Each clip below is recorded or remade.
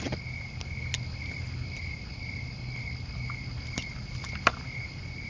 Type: recorded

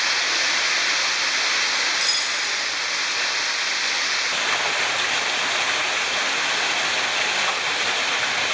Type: recorded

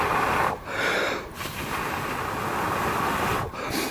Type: recorded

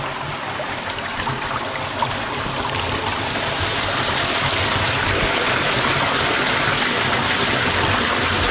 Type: recorded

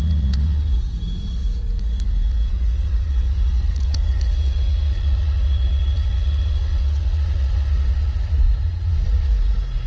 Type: remade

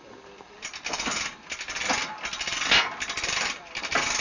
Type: recorded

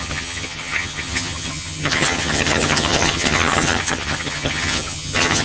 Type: remade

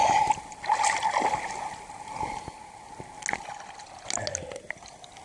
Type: recorded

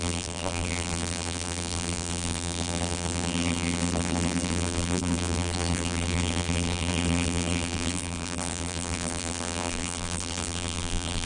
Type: remade